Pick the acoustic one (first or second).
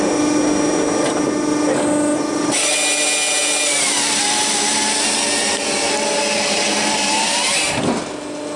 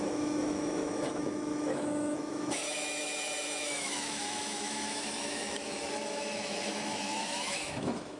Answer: first